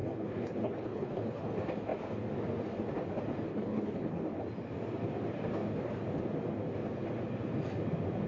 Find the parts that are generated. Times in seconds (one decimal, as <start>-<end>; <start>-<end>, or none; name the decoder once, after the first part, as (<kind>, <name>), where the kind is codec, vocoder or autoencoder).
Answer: 0.0-1.5 (codec, HILCodec); 3.5-4.2